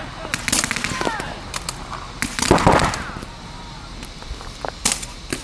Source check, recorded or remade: recorded